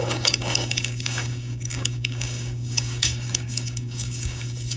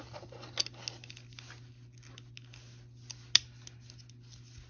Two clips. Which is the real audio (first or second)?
second